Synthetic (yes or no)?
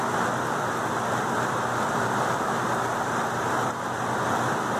no